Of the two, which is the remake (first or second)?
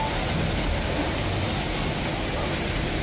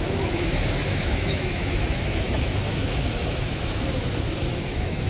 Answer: second